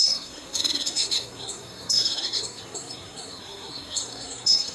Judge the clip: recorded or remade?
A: remade